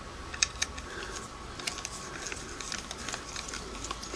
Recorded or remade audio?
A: recorded